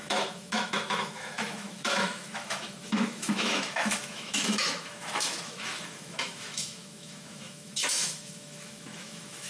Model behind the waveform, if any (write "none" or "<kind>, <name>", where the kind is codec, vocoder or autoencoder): autoencoder, DAC-VAE